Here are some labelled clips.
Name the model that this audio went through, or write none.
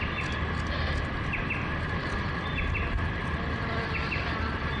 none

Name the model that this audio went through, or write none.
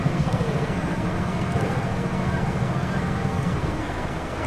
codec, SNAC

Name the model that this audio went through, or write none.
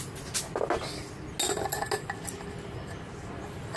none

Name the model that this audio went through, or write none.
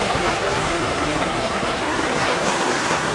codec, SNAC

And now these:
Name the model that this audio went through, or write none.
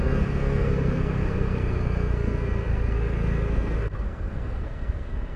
codec, SNAC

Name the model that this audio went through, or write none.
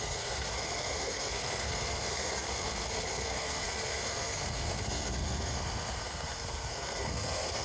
codec, SNAC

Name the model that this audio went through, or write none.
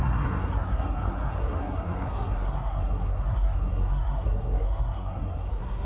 codec, SNAC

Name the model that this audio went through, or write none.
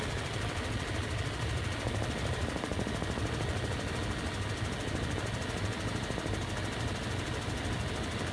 none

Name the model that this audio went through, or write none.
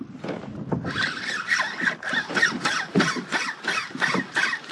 none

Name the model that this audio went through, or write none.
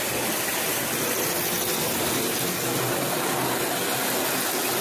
none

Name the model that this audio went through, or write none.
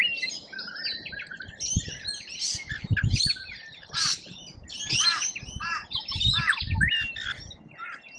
none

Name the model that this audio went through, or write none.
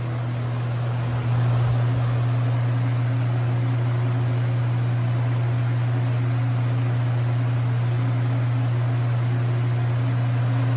none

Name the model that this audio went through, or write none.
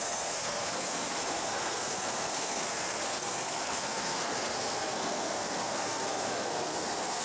codec, SNAC